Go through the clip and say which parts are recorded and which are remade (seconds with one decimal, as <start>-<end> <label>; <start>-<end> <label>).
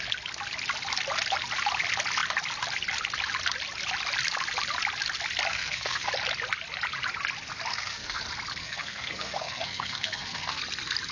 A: 0.0-5.5 recorded; 5.5-6.1 remade; 6.1-7.7 recorded; 7.7-8.2 remade; 8.2-8.6 recorded; 8.6-10.6 remade; 10.6-11.1 recorded